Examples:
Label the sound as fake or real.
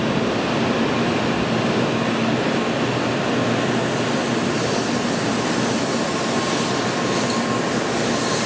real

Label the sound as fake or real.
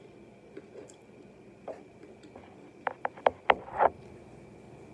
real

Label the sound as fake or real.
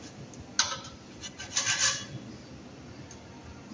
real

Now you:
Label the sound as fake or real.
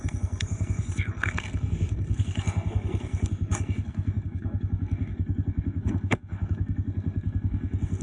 fake